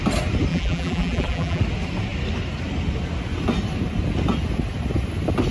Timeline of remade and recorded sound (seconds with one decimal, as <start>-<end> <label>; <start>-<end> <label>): 0.0-0.5 recorded; 0.5-1.6 remade; 1.6-5.5 recorded